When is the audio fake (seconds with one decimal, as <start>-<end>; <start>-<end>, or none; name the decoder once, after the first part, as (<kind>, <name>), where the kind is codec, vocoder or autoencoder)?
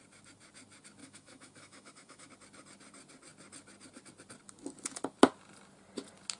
1.0-2.3 (autoencoder, DAC-VAE)